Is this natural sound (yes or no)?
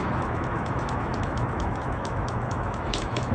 no